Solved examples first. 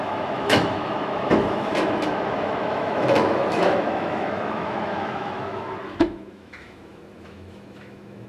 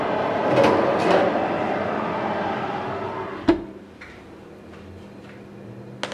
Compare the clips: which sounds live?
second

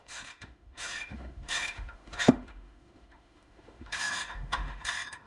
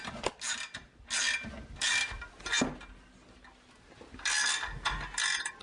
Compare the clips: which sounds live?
second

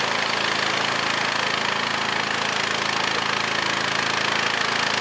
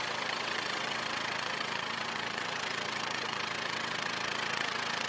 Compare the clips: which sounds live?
first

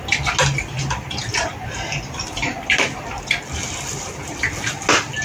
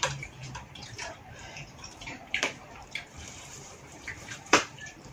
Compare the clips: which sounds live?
first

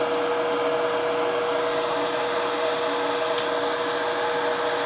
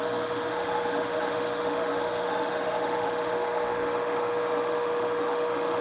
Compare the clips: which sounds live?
first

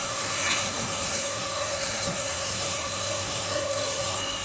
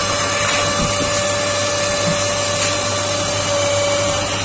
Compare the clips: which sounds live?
second